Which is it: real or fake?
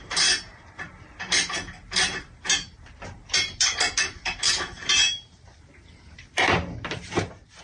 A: fake